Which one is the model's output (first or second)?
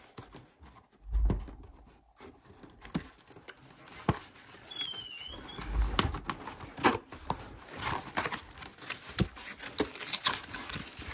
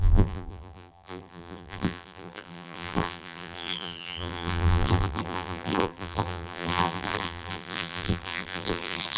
second